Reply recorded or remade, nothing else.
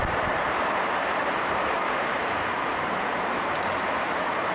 remade